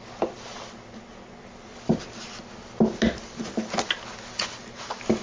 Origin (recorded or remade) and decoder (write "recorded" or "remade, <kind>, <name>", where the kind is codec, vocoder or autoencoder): recorded